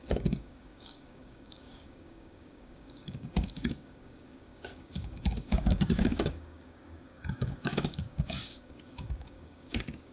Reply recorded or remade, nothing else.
remade